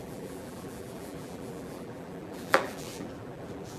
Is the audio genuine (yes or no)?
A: no